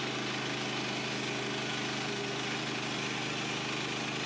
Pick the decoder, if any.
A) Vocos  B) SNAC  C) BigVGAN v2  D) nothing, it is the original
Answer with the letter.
D